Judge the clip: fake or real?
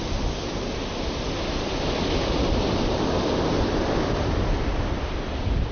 real